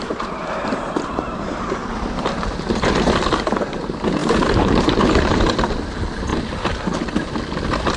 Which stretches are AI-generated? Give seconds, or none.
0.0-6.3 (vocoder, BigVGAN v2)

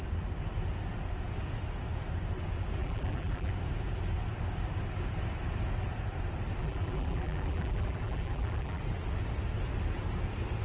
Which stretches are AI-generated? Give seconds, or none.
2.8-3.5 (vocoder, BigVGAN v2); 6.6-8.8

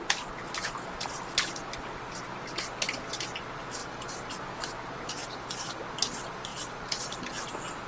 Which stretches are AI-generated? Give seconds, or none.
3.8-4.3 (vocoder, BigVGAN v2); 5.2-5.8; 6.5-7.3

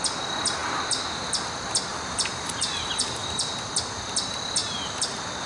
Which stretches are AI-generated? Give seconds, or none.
1.9-3.7 (vocoder, BigVGAN v2); 4.6-5.5

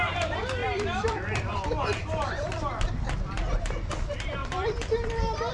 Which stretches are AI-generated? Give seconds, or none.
0.6-3.9 (vocoder, BigVGAN v2); 4.4-5.5

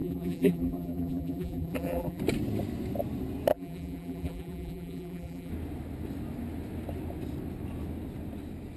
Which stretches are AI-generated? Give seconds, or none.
0.0-2.2 (vocoder, BigVGAN v2); 3.5-5.5

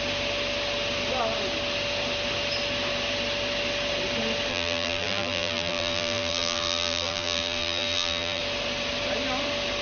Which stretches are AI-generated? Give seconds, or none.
4.5-8.4 (vocoder, BigVGAN v2)

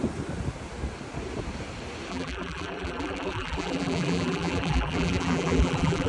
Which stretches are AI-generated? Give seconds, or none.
2.1-6.1 (vocoder, BigVGAN v2)